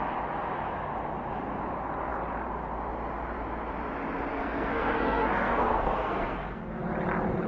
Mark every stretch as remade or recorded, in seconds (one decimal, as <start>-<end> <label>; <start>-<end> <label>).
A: 0.0-4.3 recorded; 4.3-6.8 remade; 6.8-7.5 recorded